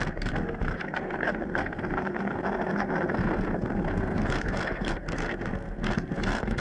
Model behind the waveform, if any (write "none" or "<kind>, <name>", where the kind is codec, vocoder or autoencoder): codec, SNAC